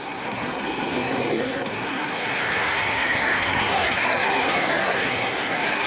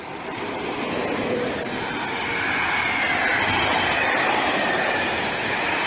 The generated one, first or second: first